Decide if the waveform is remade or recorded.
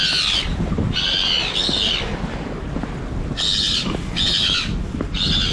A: recorded